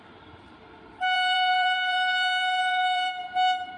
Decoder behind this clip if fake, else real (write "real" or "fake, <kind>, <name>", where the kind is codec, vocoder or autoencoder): fake, vocoder, BigVGAN v2